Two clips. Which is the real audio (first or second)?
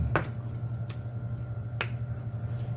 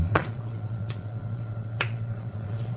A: first